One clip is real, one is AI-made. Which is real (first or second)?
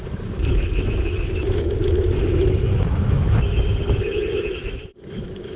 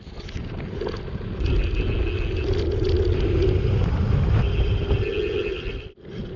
second